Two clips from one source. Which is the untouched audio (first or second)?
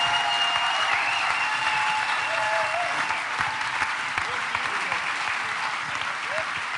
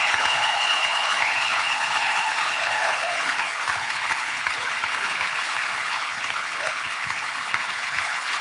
first